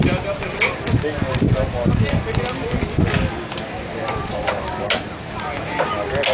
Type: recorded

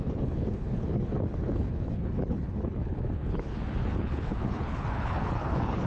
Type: remade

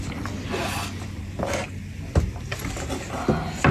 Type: recorded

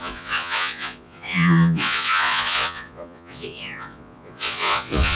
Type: remade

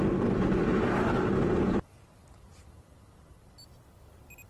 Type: recorded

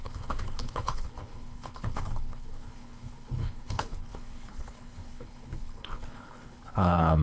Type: remade